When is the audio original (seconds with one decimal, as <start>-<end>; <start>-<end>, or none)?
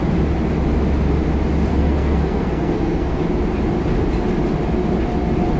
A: 0.0-1.7; 3.2-5.6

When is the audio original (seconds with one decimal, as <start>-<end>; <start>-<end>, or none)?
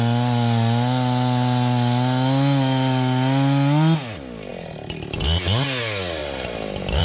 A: 0.0-7.0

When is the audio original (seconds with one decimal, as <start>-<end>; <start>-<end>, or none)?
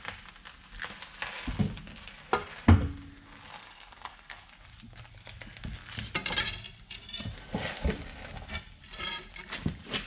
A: 0.0-3.6; 4.5-10.1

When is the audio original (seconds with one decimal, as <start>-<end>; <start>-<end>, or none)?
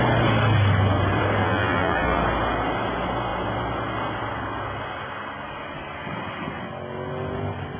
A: 0.0-1.4; 2.2-7.8